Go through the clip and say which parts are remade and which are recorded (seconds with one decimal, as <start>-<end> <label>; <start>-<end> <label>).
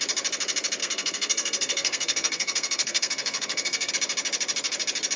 0.0-0.8 recorded; 0.8-3.9 remade; 3.9-5.2 recorded